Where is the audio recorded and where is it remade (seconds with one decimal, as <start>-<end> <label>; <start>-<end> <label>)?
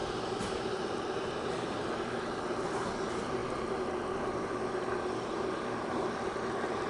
0.0-3.4 remade; 3.4-6.5 recorded; 6.5-6.9 remade